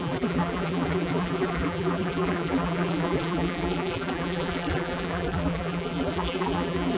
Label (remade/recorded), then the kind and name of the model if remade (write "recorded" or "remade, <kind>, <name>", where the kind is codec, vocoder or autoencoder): remade, vocoder, BigVGAN v2